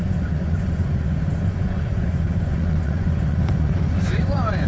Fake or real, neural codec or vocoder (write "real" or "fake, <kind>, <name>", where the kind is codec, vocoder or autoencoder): fake, vocoder, Vocos